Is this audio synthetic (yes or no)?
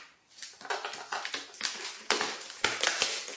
no